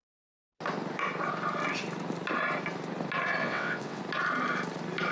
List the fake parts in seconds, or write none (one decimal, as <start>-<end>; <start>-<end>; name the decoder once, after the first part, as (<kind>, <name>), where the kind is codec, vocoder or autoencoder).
3.4-4.0 (vocoder, WaveNeXt)